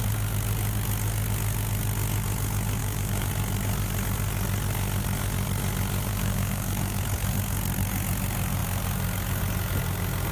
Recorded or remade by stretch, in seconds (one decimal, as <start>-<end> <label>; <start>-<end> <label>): 0.0-2.8 recorded; 2.8-3.3 remade; 3.3-6.1 recorded; 6.1-7.0 remade; 7.0-10.3 recorded